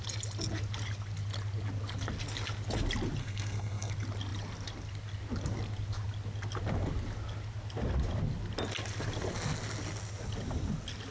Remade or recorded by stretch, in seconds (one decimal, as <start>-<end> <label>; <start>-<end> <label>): 0.0-3.2 recorded; 3.2-3.9 remade; 3.9-11.1 recorded